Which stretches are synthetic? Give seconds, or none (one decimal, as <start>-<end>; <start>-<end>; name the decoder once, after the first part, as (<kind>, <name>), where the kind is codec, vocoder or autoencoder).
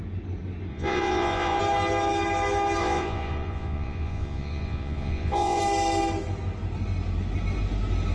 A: 0.7-1.6 (vocoder, Vocos); 2.8-5.6